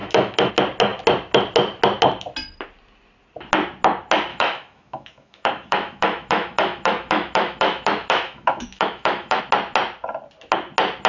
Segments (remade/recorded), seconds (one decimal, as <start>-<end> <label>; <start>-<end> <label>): 0.0-0.5 remade; 0.5-4.3 recorded; 4.3-9.4 remade; 9.4-11.1 recorded